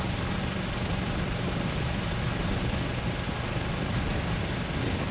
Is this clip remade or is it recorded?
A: recorded